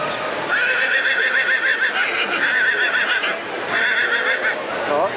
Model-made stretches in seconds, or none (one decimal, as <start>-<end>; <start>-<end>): none